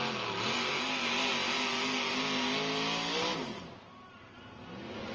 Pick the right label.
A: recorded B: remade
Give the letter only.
A